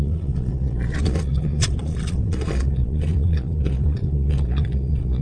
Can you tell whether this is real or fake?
fake